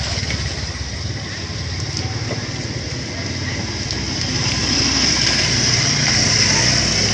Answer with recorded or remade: recorded